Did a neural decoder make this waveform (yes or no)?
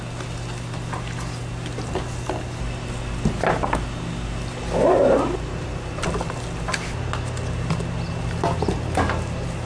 no